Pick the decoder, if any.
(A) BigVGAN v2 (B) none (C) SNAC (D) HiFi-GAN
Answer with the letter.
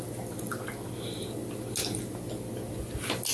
B